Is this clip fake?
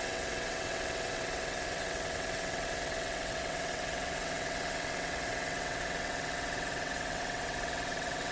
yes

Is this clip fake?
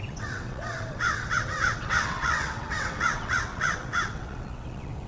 yes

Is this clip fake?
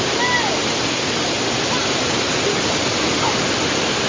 no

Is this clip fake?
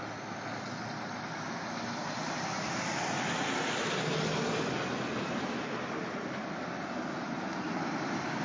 no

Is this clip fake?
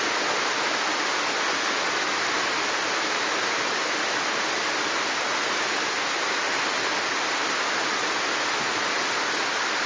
no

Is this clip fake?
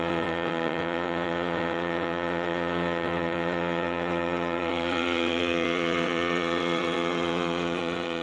yes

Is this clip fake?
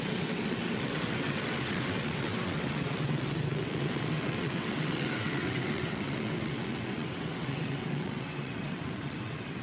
yes